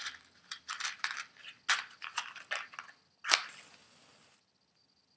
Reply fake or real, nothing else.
real